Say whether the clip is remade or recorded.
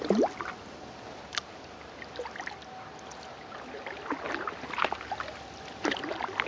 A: recorded